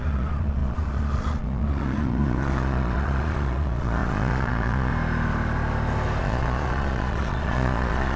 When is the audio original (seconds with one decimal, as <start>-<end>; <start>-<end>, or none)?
4.9-6.2